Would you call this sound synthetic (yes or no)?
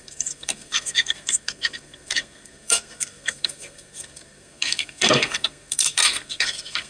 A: yes